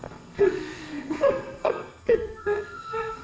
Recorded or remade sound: remade